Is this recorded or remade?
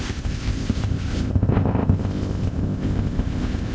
remade